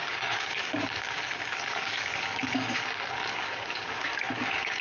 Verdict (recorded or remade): remade